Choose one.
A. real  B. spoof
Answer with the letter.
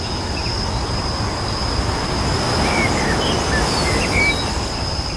A